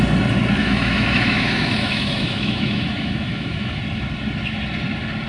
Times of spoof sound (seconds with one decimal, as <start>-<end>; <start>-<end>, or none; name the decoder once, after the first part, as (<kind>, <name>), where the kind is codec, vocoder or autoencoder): 0.6-3.8 (autoencoder, DAC-VAE)